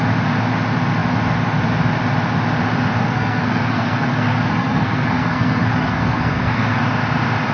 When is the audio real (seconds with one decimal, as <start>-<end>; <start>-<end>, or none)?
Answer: 0.0-3.0; 6.8-7.5